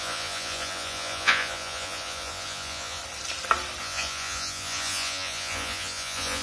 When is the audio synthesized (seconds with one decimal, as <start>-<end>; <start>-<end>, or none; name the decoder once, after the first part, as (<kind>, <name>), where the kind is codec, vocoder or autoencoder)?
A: 0.0-3.0 (vocoder, Vocos); 3.8-6.4